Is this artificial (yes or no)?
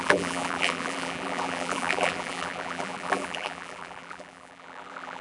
yes